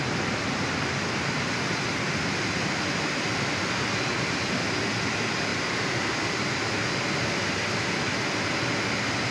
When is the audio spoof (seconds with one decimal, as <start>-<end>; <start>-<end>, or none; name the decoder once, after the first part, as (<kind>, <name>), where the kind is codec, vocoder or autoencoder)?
none

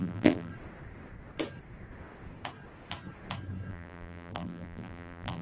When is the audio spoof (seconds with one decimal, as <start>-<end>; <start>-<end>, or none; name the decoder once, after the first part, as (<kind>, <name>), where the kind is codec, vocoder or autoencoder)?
0.0-0.5 (vocoder, BigVGAN v2); 3.7-5.4

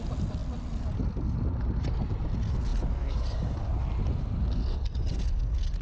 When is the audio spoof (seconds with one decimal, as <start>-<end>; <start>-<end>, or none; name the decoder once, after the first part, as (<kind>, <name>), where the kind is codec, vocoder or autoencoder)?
none